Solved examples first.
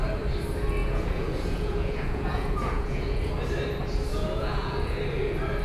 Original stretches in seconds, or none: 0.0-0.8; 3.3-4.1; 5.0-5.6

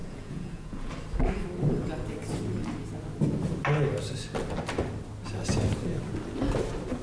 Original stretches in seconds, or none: 0.9-7.0